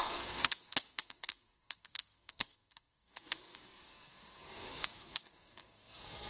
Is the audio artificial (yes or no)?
yes